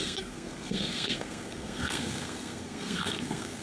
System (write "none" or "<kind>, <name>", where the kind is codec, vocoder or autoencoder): codec, SNAC